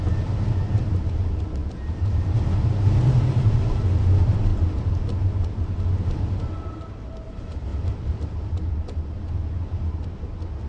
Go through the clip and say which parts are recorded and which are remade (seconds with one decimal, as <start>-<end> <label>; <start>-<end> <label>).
0.0-10.7 recorded